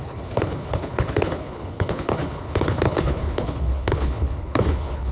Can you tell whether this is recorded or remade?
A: remade